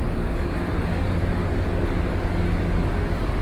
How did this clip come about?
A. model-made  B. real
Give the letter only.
A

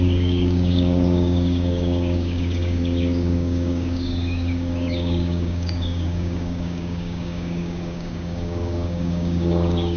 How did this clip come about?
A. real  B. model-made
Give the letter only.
B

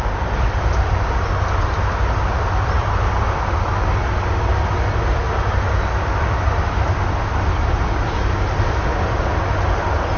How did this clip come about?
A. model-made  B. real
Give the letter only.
B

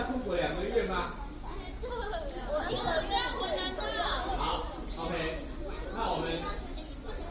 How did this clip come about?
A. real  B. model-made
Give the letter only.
A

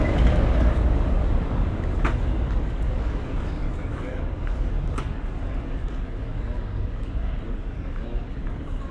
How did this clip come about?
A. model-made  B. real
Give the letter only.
A